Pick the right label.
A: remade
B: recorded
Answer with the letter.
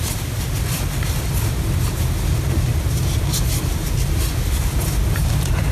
B